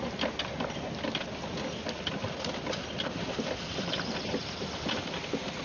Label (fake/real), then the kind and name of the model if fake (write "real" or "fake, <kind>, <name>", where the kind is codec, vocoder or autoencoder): real